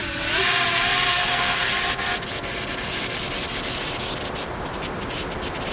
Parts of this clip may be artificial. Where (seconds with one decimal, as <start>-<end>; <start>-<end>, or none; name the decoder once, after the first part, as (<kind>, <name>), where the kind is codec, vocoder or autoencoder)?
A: 1.1-1.7 (codec, SNAC)